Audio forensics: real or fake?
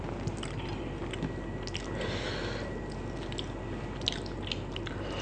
real